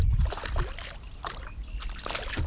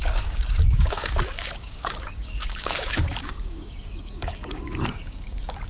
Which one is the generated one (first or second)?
second